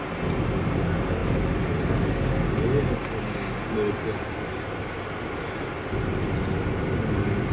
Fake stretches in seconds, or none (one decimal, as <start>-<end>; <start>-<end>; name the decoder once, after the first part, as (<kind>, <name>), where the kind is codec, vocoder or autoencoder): none